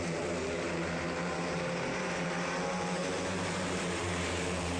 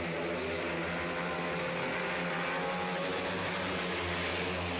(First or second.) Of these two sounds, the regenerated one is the first